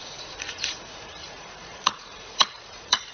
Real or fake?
fake